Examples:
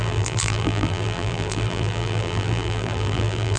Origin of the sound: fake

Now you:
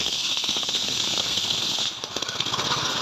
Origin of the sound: fake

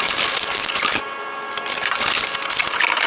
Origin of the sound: real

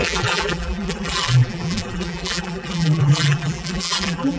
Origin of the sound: fake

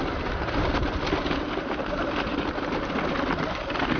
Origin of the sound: real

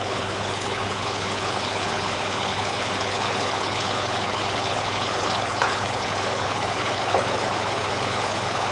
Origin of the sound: fake